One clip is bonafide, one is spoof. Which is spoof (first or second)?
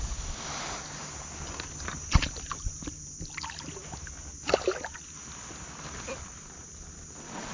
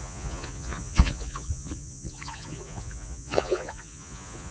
second